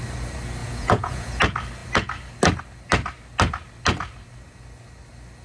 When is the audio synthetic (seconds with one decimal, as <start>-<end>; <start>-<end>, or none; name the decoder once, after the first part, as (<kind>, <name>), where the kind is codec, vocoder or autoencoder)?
0.6-1.3 (vocoder, Vocos)